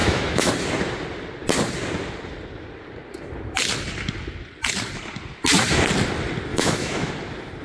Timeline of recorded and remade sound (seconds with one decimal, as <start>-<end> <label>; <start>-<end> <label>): 0.0-0.5 remade; 0.5-6.5 recorded; 6.5-7.1 remade; 7.1-7.6 recorded